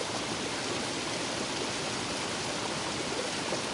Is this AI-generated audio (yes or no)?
no